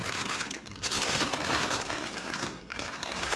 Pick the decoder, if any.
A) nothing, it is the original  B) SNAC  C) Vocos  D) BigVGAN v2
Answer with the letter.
B